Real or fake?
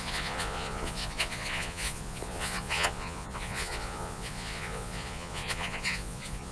fake